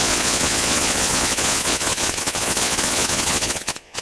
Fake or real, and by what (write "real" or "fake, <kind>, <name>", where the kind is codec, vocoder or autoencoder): fake, vocoder, Vocos